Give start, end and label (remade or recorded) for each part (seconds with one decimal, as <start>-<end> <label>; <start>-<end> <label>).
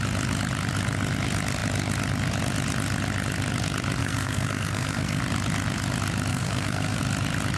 0.0-4.0 recorded; 4.0-5.2 remade; 5.2-6.3 recorded; 6.3-7.0 remade; 7.0-7.6 recorded